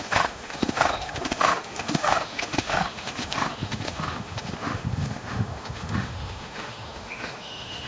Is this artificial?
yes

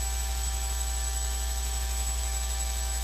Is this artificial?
yes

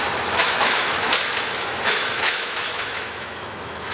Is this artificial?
yes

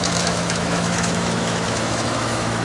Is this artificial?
yes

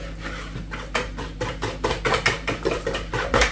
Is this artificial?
no